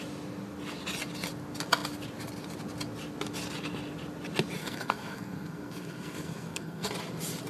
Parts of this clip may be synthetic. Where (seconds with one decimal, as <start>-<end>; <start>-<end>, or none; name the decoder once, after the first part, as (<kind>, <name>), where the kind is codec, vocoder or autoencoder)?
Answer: 4.6-6.9 (codec, SNAC)